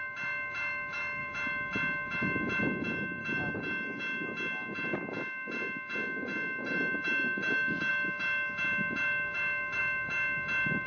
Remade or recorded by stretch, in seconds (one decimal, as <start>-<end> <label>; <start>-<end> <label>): 0.0-10.9 recorded